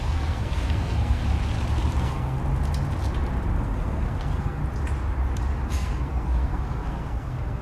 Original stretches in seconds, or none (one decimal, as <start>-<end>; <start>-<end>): 1.2-2.0; 2.4-3.6; 4.6-5.7